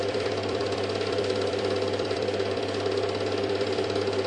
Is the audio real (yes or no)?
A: no